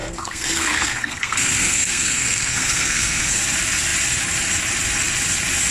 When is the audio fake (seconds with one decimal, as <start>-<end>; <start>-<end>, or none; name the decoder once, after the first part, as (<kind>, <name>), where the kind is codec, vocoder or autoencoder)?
0.0-3.4 (codec, SNAC)